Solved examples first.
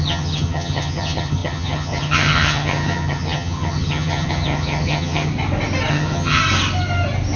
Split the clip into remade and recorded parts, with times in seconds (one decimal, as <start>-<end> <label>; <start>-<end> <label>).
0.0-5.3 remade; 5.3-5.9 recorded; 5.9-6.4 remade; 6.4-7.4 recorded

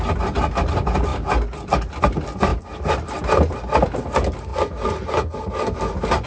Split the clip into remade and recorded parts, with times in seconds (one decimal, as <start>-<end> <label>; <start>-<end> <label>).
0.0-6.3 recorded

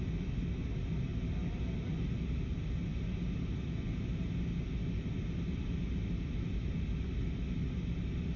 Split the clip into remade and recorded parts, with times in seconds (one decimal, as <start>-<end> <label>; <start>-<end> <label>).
0.0-8.4 recorded

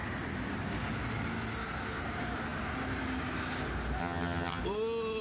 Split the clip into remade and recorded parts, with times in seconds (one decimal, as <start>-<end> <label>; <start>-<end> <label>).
0.0-4.0 recorded; 4.0-4.6 remade; 4.6-5.2 recorded

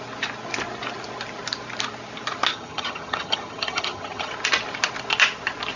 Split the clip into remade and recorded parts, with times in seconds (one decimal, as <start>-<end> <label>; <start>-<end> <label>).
0.0-2.5 recorded; 2.5-4.3 remade; 4.3-5.8 recorded

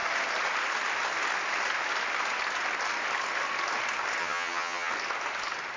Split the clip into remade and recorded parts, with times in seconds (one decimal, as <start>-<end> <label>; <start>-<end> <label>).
0.0-4.2 recorded; 4.2-4.9 remade; 4.9-5.8 recorded

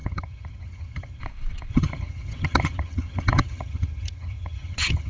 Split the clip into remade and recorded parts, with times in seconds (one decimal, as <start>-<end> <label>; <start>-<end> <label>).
0.0-1.2 remade; 1.2-1.7 recorded; 1.7-5.1 remade

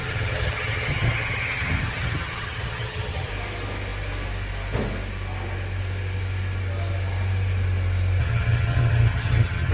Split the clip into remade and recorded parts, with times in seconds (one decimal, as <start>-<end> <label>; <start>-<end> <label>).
0.0-3.3 remade; 3.3-8.2 recorded; 8.2-9.7 remade